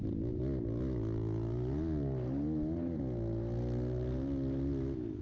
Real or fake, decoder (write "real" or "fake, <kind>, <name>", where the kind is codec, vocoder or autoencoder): real